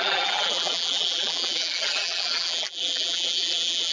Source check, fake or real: fake